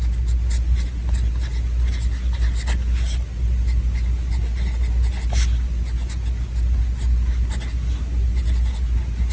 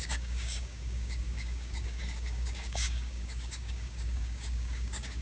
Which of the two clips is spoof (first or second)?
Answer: second